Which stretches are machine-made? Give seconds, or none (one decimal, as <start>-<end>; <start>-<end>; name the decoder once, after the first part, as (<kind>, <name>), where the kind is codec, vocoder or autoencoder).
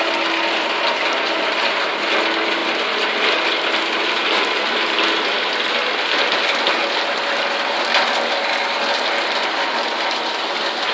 none